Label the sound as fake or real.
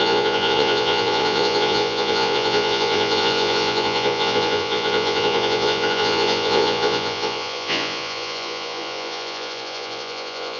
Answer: fake